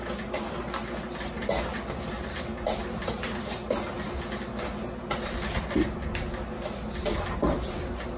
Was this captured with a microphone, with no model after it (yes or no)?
yes